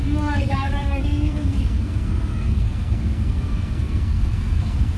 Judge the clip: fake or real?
fake